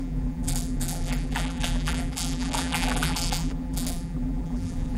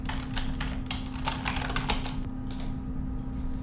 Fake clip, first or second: first